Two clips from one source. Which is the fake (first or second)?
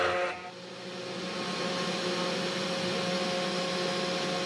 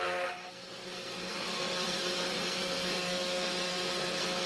second